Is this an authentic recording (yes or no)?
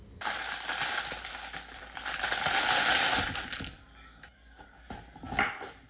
yes